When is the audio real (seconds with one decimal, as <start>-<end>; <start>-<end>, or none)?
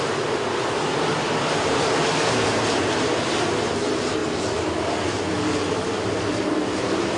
none